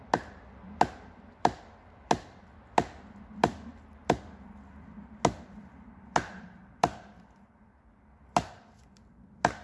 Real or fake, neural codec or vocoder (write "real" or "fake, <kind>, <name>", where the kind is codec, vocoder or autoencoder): real